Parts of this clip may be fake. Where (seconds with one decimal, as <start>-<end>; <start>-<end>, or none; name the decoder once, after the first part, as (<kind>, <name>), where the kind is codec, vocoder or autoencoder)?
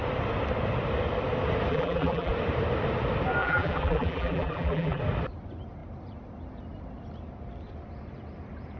1.7-2.3 (vocoder, BigVGAN v2); 3.4-5.0